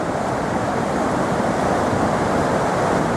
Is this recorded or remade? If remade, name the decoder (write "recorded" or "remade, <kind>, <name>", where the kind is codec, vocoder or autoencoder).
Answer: remade, vocoder, BigVGAN v2